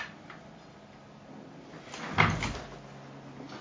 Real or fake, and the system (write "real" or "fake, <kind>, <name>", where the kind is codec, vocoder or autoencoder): real